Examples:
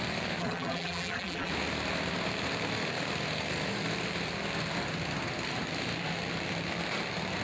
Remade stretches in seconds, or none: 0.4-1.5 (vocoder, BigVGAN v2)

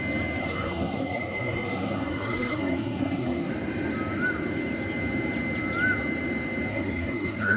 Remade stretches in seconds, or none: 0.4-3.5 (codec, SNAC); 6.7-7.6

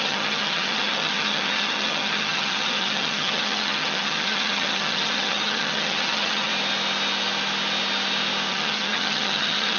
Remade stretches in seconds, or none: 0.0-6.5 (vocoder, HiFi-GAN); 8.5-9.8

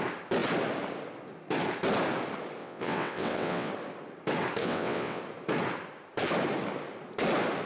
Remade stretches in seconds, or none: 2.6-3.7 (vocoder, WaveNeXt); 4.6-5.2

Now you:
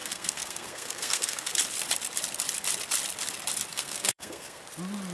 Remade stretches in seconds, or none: 0.0-1.5 (codec, SNAC); 3.7-4.6